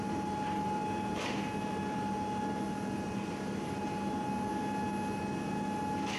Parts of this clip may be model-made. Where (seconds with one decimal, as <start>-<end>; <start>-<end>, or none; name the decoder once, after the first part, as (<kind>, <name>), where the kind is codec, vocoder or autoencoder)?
none

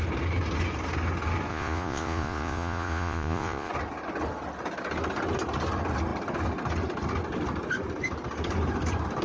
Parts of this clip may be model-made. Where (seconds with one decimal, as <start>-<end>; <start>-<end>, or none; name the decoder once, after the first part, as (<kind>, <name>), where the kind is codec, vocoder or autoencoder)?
1.5-3.7 (vocoder, Vocos)

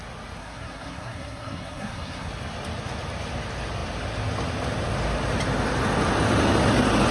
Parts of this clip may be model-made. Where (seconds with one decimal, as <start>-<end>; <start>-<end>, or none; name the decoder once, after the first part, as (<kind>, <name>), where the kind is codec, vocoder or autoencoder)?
0.4-2.3 (codec, SNAC)

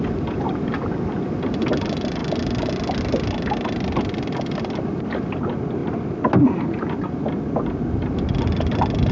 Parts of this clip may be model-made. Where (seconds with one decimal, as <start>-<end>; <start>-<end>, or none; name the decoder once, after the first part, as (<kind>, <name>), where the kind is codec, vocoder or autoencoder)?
none

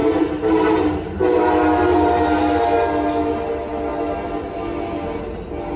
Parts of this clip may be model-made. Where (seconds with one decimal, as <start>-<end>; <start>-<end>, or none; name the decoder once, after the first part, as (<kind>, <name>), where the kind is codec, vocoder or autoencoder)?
none

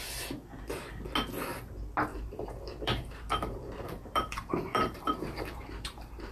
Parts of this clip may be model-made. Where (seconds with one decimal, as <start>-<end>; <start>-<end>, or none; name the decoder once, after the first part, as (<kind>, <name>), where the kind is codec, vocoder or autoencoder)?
2.1-6.3 (vocoder, BigVGAN v2)

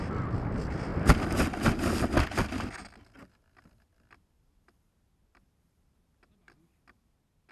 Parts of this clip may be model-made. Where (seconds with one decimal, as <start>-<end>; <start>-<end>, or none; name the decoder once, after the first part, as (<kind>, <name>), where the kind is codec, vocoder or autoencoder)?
none